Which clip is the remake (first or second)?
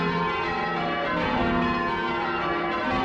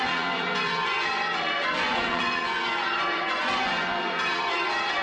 second